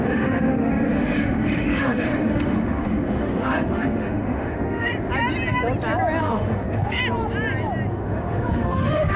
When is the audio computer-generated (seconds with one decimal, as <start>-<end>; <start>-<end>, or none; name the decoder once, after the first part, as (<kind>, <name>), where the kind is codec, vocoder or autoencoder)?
0.0-4.9 (autoencoder, DAC-VAE); 6.2-7.0; 7.9-9.2